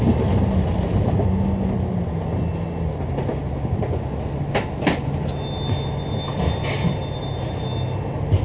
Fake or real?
real